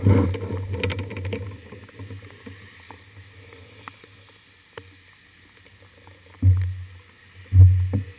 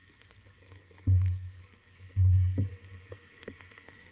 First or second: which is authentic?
first